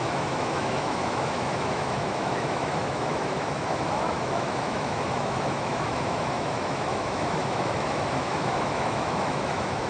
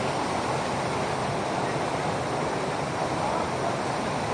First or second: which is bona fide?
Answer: second